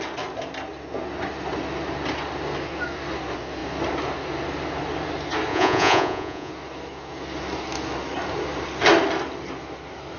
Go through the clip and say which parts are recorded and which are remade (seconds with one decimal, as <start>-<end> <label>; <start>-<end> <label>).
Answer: 0.0-5.5 recorded; 5.5-6.5 remade; 6.5-10.2 recorded

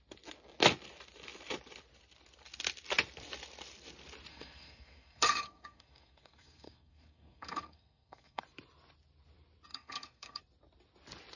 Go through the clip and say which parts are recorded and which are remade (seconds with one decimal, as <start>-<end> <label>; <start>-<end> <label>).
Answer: 0.0-4.3 recorded; 4.3-8.4 remade; 8.4-9.7 recorded; 9.7-10.4 remade; 10.4-11.4 recorded